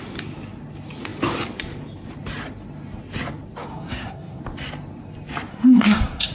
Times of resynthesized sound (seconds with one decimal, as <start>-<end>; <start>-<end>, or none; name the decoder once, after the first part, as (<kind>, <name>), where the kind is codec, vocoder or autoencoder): 3.7-4.4 (codec, SNAC); 5.5-6.3